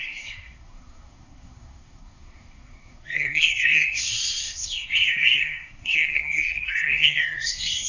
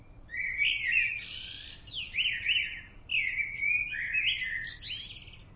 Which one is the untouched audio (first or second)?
second